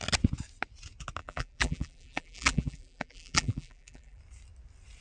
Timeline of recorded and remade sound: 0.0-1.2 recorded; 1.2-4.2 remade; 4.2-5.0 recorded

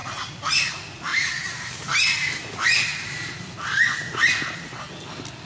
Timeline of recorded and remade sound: 0.0-1.1 recorded; 1.1-1.7 remade; 1.7-2.9 recorded; 2.9-3.5 remade; 3.5-5.5 recorded

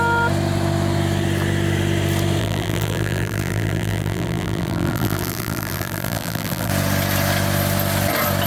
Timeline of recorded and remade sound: 0.0-2.4 recorded; 2.4-6.7 remade; 6.7-8.5 recorded

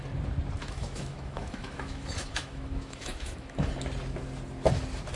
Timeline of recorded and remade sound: 0.0-0.6 recorded; 0.6-3.7 remade; 3.7-5.2 recorded

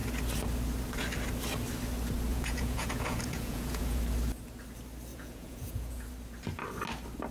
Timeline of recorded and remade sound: 0.0-2.3 recorded; 2.3-4.0 remade; 4.0-5.1 recorded; 5.1-6.1 remade; 6.1-7.3 recorded

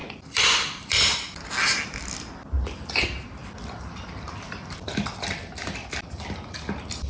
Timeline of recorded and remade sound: 0.0-1.5 remade; 1.5-3.4 recorded; 3.4-5.3 remade; 5.3-7.1 recorded

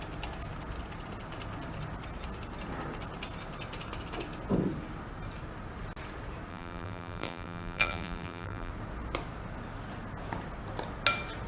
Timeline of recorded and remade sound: 0.0-6.5 recorded; 6.5-8.7 remade; 8.7-11.5 recorded

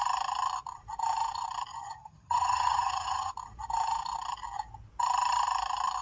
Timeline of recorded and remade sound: 0.0-1.7 recorded; 1.7-3.3 remade; 3.3-6.0 recorded